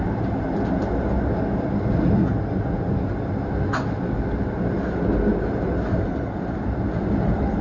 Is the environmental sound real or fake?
real